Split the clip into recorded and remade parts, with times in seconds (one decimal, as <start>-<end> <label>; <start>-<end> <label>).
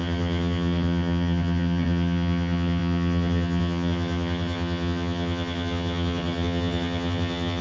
0.0-7.6 remade